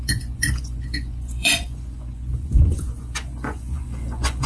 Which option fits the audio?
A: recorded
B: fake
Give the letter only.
B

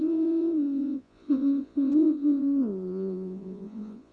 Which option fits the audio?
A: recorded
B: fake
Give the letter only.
B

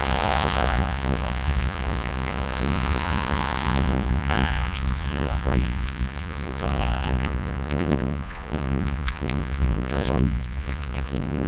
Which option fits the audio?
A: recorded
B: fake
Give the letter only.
B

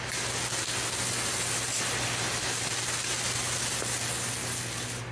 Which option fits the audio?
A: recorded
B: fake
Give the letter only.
A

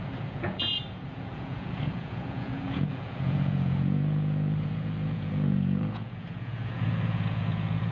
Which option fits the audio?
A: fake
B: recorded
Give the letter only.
A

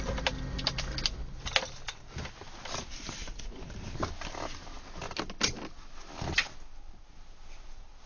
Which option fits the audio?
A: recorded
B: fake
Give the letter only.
A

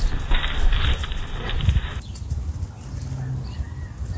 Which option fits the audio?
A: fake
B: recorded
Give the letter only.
B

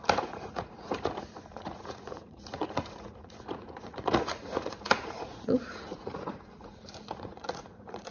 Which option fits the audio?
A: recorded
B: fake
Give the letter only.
B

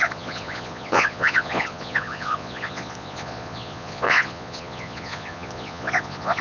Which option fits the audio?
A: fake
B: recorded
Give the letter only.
A